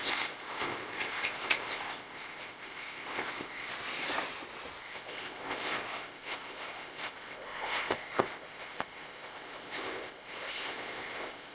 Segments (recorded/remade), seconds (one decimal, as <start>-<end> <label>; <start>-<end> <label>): 0.0-3.7 remade; 3.7-4.8 recorded; 4.8-11.5 remade